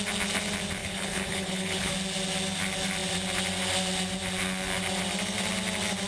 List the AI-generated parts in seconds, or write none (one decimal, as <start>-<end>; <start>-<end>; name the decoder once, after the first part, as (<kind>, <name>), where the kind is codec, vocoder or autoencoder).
0.8-1.9 (codec, HILCodec)